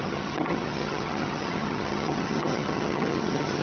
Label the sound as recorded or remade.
remade